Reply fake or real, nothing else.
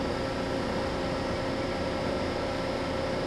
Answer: real